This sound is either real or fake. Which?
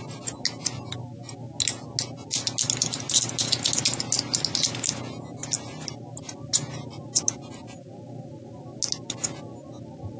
real